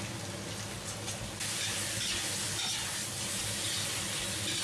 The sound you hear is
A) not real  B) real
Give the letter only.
B